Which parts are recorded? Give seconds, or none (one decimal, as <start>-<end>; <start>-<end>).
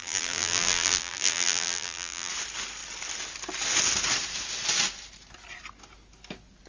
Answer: 2.3-6.7